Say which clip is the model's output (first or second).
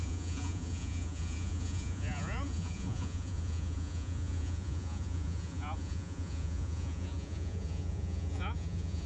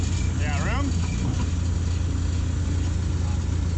first